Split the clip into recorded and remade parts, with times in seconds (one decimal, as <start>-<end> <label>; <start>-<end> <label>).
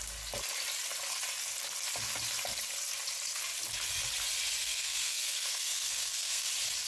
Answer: 0.0-4.6 recorded; 4.6-6.5 remade; 6.5-6.9 recorded